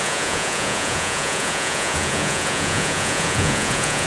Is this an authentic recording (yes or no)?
no